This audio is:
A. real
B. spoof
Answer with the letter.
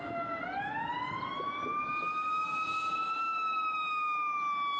A